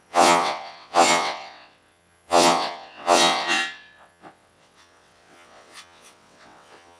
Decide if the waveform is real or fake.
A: fake